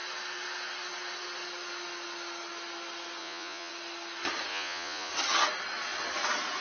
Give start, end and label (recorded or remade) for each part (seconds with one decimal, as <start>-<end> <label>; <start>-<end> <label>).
0.0-3.2 recorded; 3.2-3.7 remade; 3.7-4.5 recorded; 4.5-5.1 remade; 5.1-6.6 recorded